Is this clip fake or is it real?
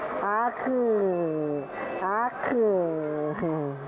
real